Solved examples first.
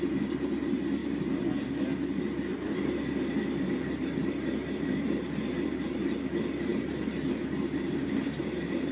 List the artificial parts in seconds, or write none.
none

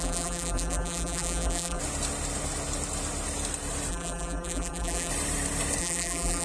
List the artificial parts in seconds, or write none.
0.0-1.8 (vocoder, BigVGAN v2); 3.9-5.1; 5.8-6.4

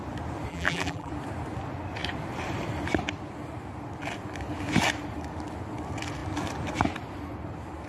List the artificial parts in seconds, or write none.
0.5-1.1 (vocoder, BigVGAN v2)

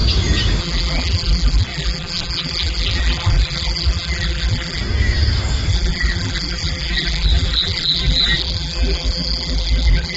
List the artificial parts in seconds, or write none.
0.6-4.8 (vocoder, BigVGAN v2); 5.7-10.2

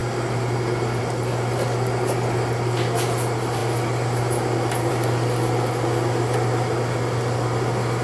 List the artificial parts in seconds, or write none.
none

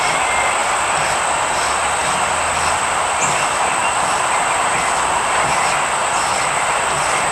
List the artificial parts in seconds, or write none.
0.6-1.4 (vocoder, BigVGAN v2)

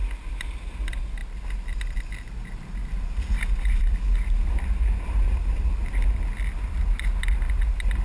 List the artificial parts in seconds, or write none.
none

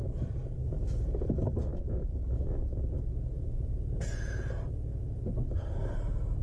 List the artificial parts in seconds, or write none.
0.0-1.7 (vocoder, BigVGAN v2); 5.5-6.4